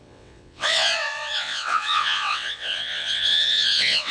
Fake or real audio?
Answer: fake